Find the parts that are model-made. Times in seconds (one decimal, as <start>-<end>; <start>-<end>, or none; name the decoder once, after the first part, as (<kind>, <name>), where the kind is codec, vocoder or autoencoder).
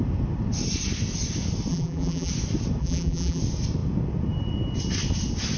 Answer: 1.7-2.3 (vocoder, BigVGAN v2); 2.8-3.4